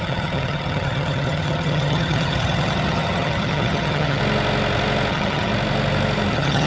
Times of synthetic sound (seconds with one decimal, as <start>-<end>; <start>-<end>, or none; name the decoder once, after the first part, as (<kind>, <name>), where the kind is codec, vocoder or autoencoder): 0.0-4.2 (vocoder, HiFi-GAN); 5.1-5.5; 6.3-6.7